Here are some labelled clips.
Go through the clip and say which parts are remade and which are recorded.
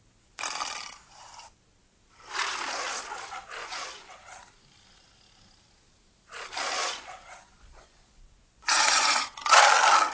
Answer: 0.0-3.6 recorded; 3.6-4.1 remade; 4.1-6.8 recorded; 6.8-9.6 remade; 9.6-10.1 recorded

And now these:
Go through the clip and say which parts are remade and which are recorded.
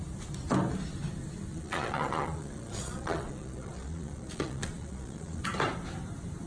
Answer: 0.0-1.5 recorded; 1.5-5.4 remade; 5.4-6.5 recorded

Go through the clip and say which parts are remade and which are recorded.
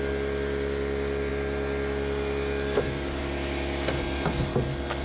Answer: 0.0-5.0 recorded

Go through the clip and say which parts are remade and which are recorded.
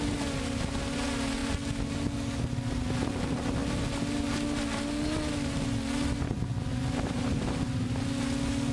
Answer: 0.0-8.7 recorded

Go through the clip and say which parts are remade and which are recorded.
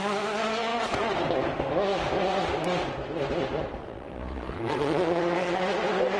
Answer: 0.0-3.8 recorded; 3.8-5.2 remade; 5.2-6.2 recorded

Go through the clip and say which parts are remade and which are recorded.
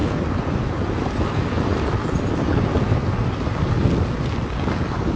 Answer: 0.0-5.2 recorded